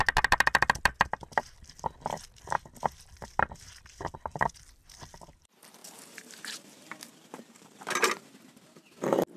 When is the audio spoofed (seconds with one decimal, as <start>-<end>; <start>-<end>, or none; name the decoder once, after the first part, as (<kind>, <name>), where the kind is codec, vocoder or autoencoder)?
5.8-7.8 (vocoder, BigVGAN v2)